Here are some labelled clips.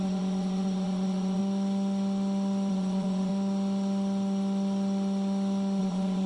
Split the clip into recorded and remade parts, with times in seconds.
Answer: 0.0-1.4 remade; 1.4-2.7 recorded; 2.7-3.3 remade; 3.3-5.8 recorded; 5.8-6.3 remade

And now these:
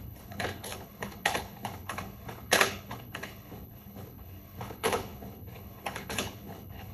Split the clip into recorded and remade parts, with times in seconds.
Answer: 0.0-6.9 remade

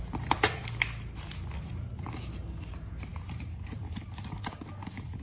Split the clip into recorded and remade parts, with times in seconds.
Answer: 0.0-0.6 remade; 0.6-2.7 recorded; 2.7-5.2 remade

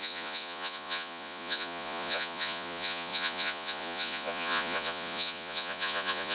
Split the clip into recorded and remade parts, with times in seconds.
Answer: 0.0-6.3 remade

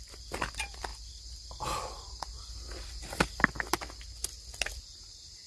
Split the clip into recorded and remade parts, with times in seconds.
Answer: 0.0-5.5 recorded